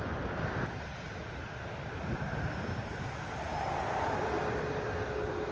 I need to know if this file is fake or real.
real